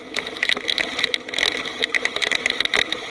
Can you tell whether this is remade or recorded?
recorded